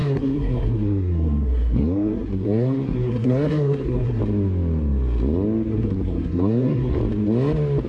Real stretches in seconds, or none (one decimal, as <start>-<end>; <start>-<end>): 4.2-5.7; 7.0-7.9